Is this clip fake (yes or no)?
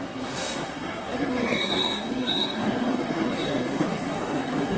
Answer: yes